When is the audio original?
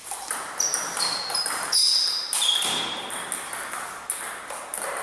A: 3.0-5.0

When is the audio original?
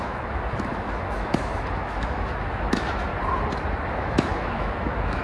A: 3.1-3.9